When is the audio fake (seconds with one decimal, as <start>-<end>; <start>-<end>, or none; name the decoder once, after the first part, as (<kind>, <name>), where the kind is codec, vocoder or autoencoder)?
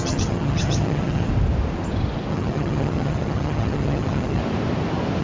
0.0-1.3 (vocoder, HiFi-GAN); 2.3-4.4